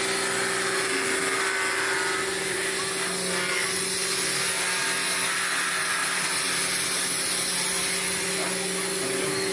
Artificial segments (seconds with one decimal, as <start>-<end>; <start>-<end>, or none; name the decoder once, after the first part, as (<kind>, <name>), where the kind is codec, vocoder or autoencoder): none